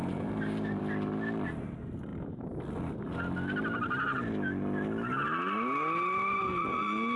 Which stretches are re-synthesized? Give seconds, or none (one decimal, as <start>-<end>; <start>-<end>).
0.0-0.8